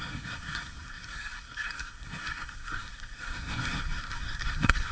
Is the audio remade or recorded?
remade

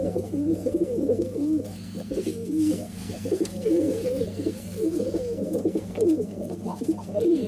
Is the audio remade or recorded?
remade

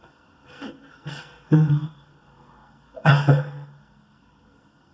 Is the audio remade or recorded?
remade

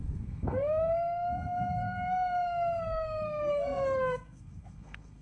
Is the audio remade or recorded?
remade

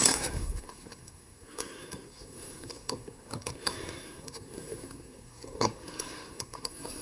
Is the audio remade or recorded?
remade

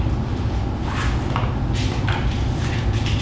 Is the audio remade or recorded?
recorded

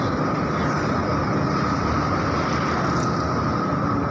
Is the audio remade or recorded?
recorded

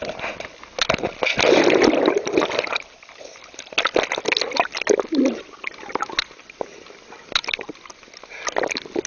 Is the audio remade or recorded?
recorded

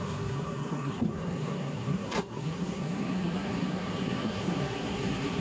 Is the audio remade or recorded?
remade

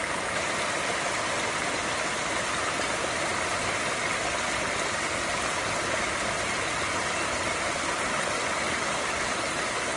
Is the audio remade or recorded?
recorded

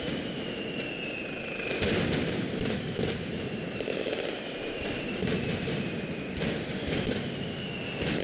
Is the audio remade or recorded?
recorded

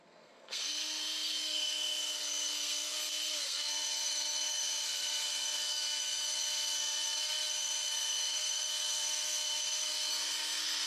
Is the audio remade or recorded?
remade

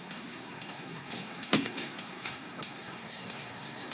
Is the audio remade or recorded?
remade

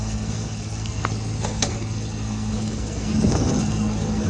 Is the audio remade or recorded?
remade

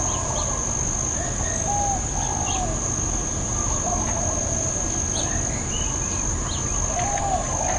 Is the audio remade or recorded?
recorded